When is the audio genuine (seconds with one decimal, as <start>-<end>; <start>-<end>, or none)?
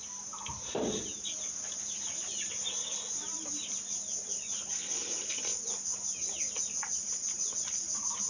0.0-8.3